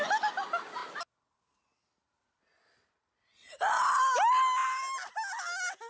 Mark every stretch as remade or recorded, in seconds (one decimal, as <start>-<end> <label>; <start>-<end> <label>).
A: 0.0-5.9 recorded